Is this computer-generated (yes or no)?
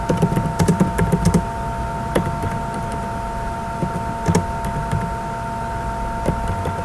no